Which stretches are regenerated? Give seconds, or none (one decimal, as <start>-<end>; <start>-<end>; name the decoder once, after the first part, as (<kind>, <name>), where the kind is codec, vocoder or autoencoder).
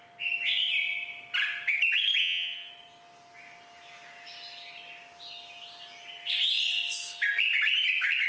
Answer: 2.2-2.7 (vocoder, WaveNeXt)